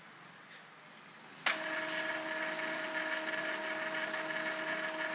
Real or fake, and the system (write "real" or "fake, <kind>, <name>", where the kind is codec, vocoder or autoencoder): real